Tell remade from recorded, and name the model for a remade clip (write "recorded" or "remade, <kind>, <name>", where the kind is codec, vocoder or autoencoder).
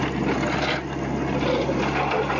recorded